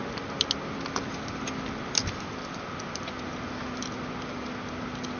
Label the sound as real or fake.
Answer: real